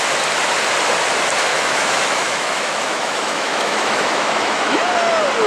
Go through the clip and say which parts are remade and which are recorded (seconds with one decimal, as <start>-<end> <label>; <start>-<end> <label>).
0.0-1.5 recorded; 1.5-4.8 remade; 4.8-5.5 recorded